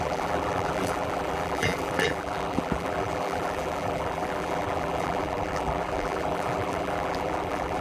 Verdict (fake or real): fake